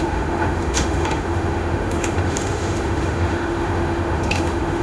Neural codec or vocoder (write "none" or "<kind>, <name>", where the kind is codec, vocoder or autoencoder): autoencoder, DAC-VAE